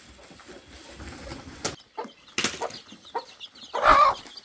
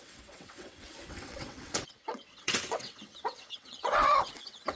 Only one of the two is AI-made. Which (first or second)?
second